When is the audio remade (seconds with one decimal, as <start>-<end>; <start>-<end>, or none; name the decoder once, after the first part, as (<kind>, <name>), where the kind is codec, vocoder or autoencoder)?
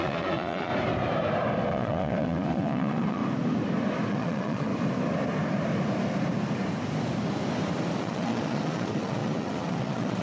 0.0-0.7 (vocoder, Vocos); 1.7-3.2; 4.1-4.7; 8.0-10.2